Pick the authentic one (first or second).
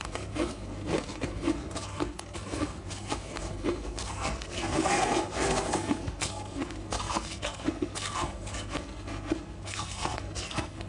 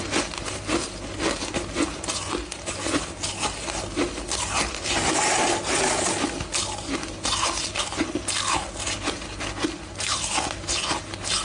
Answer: second